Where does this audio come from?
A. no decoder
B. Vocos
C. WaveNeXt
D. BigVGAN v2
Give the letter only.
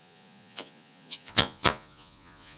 B